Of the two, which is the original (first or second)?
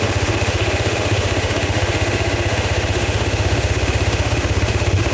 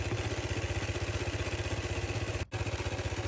second